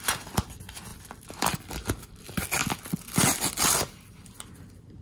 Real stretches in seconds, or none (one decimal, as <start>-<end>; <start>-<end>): 0.0-0.9; 2.2-2.6; 3.6-5.0